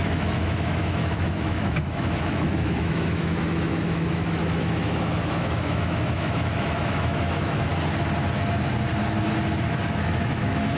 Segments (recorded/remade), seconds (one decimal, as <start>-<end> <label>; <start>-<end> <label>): 0.0-7.7 remade; 7.7-9.7 recorded; 9.7-10.8 remade